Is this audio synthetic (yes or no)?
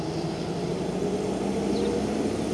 no